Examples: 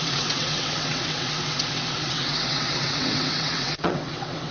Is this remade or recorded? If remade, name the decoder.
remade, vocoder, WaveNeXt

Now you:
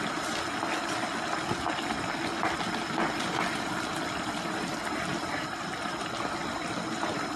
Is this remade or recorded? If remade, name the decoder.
recorded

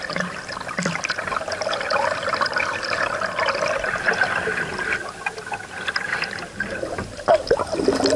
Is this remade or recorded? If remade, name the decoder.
recorded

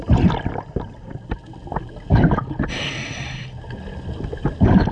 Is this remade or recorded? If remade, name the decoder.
recorded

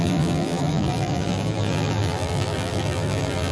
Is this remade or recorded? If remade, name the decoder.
remade, vocoder, BigVGAN v2